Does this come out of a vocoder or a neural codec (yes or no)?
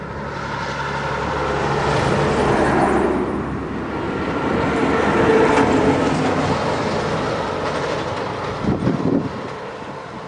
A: no